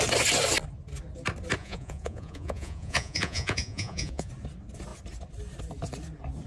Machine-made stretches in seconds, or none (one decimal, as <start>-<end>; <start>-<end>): 1.6-4.3